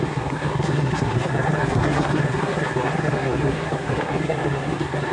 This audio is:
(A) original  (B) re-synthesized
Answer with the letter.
B